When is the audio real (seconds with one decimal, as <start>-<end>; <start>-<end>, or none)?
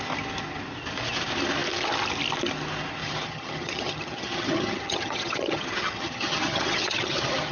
0.0-3.0